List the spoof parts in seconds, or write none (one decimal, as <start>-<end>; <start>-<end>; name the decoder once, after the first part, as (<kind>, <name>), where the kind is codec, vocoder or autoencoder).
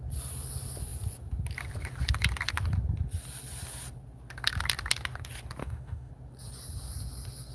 5.6-6.1 (autoencoder, DAC-VAE)